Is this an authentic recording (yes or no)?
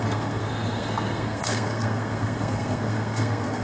no